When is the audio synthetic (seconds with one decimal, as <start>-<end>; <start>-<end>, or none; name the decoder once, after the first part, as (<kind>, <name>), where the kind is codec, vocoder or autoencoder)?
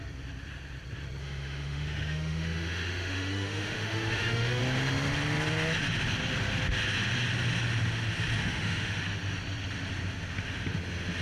1.2-4.6 (autoencoder, DAC-VAE); 8.4-9.0